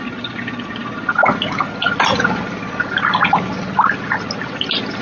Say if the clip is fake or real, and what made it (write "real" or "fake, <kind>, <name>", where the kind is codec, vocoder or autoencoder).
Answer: real